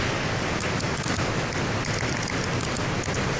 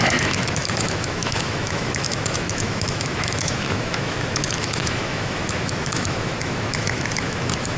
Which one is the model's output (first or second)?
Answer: second